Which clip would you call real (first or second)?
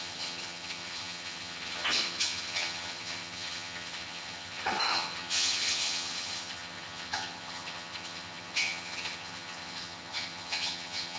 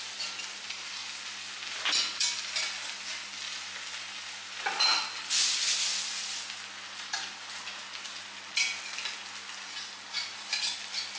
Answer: second